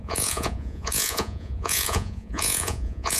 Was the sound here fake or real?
fake